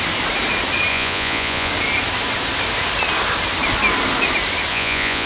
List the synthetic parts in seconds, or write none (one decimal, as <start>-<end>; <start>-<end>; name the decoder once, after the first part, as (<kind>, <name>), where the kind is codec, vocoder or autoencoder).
0.9-1.7 (vocoder, Vocos); 4.7-5.3